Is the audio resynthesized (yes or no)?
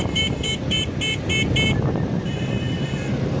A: no